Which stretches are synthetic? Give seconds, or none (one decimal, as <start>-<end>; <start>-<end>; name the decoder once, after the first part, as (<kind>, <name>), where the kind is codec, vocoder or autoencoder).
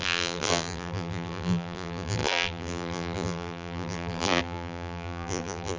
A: 0.0-5.8 (vocoder, BigVGAN v2)